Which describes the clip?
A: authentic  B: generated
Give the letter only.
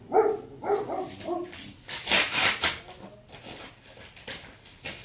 A